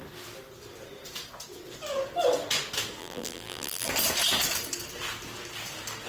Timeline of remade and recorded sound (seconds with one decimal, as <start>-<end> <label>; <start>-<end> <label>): 0.0-3.0 recorded; 3.0-3.9 remade; 3.9-6.1 recorded